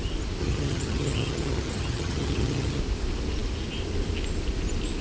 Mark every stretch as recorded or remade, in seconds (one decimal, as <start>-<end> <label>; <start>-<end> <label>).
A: 0.0-0.4 recorded; 0.4-2.8 remade; 2.8-5.0 recorded

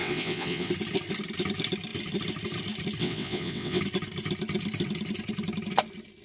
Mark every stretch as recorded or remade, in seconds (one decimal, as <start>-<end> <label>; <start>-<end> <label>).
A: 0.0-0.7 remade; 0.7-3.0 recorded; 3.0-3.8 remade; 3.8-6.2 recorded

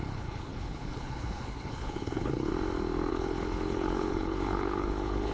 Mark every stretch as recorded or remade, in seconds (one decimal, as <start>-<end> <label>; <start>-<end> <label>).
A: 0.0-2.5 remade; 2.5-3.1 recorded; 3.1-5.3 remade

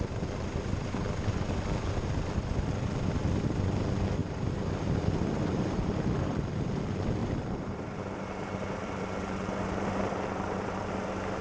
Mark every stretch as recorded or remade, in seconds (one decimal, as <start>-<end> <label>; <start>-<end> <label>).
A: 0.0-4.2 recorded; 4.2-6.8 remade; 6.8-7.2 recorded; 7.2-10.9 remade; 10.9-11.4 recorded

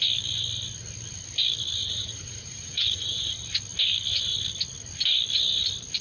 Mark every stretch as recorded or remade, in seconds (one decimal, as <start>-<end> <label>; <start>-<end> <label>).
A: 0.0-1.8 recorded; 1.8-3.3 remade; 3.3-6.0 recorded

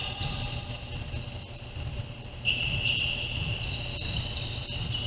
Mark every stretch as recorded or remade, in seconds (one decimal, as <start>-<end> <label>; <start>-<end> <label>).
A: 0.0-5.1 recorded